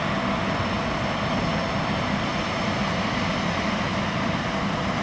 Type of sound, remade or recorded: recorded